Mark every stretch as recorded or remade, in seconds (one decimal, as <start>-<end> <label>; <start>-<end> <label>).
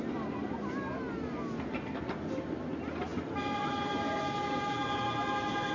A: 0.0-5.7 recorded